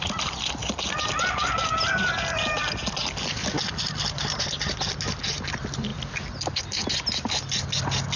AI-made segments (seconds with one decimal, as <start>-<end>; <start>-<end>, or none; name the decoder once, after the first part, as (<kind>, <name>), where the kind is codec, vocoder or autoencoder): none